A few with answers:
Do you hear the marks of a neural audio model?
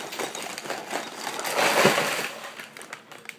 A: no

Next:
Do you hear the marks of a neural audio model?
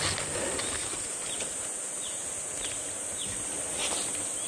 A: no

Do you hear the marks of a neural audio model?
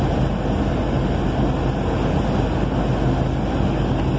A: no